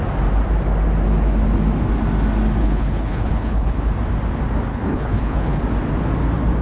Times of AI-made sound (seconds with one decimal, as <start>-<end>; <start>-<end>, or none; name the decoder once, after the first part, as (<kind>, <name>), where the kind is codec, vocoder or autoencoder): 2.6-3.8 (codec, HILCodec); 4.7-5.6